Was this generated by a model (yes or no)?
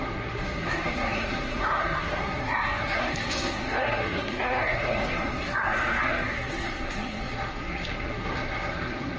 yes